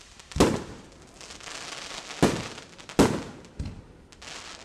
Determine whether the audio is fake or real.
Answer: real